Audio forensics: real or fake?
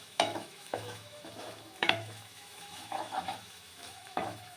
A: fake